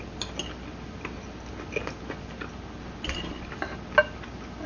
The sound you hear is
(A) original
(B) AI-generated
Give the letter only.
A